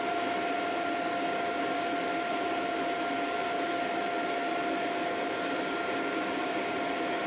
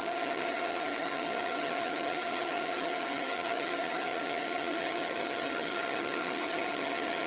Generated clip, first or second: second